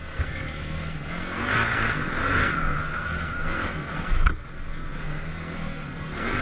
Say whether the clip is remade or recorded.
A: remade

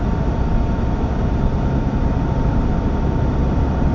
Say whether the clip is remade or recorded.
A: recorded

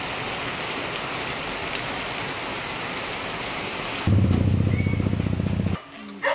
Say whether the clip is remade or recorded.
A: recorded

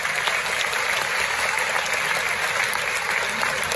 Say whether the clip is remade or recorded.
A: recorded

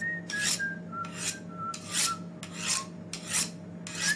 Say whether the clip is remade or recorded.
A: recorded